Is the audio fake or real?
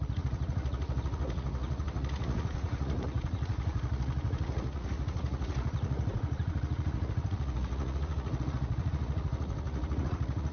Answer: fake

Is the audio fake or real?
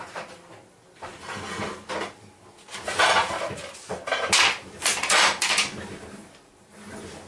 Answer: real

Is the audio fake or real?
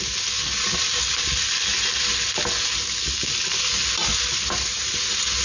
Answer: real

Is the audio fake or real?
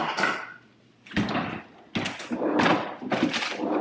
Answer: real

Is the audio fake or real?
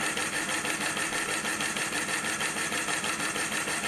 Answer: real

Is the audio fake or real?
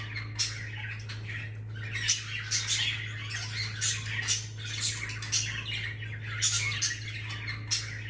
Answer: real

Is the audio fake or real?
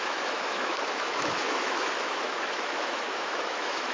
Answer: fake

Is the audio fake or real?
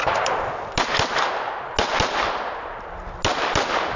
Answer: real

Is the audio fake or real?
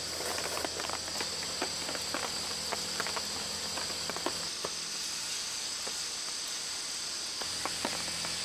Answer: real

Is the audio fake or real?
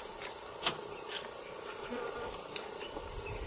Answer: real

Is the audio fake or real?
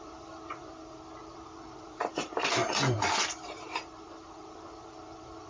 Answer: fake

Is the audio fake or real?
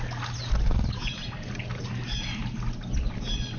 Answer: real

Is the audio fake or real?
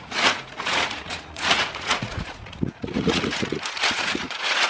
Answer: fake